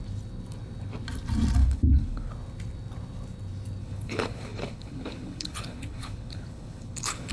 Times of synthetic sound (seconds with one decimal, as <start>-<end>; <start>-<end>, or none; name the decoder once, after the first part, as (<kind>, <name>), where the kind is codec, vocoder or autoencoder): 1.6-2.3 (codec, HILCodec); 3.8-7.3